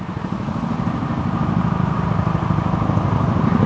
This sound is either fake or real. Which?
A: fake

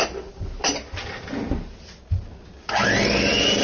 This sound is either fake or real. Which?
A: real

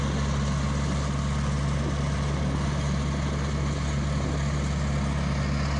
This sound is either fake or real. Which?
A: real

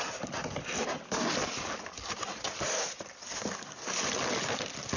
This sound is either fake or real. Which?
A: real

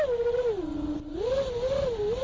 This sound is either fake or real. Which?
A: real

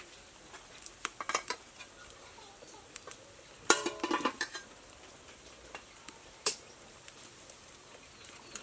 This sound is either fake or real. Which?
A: fake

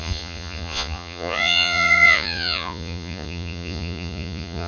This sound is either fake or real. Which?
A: fake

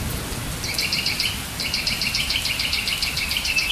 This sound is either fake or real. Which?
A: real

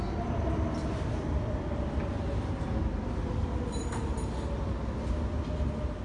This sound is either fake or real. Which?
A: real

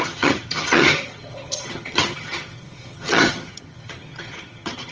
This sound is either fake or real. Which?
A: fake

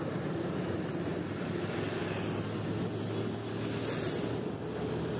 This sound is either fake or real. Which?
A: real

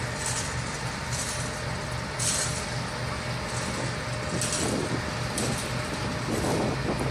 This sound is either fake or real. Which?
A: real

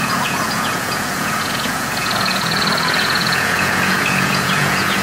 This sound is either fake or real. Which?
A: fake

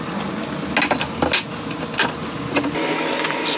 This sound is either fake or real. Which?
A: real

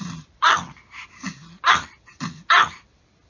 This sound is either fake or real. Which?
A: real